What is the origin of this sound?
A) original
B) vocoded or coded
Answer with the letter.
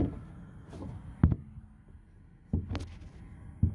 A